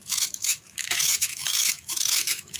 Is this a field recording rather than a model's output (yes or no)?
no